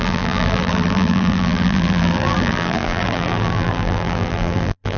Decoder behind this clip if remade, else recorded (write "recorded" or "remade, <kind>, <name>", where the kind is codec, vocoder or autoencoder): remade, vocoder, BigVGAN v2